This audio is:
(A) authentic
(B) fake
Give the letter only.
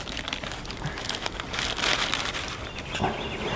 A